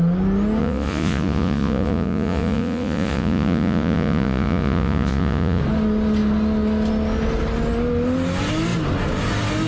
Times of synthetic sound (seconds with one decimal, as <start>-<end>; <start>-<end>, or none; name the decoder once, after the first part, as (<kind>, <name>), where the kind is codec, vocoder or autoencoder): 0.6-5.6 (vocoder, Vocos)